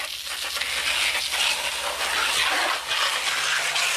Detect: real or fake real